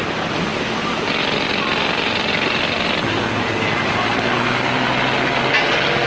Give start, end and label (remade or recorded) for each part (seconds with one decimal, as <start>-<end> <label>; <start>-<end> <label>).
0.0-6.1 recorded